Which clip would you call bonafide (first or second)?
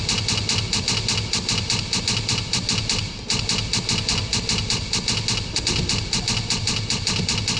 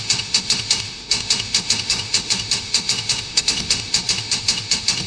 first